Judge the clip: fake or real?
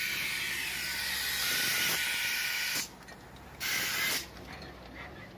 real